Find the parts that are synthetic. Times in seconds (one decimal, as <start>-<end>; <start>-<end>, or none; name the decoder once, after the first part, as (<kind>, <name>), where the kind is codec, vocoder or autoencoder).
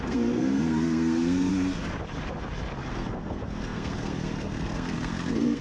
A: 0.0-1.5 (codec, SNAC); 2.9-5.6